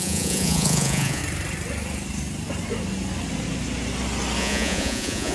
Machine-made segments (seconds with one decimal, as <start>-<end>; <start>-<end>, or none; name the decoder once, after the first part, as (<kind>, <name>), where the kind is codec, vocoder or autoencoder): 0.0-1.2 (vocoder, Vocos); 4.4-5.3